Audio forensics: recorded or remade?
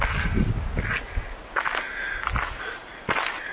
recorded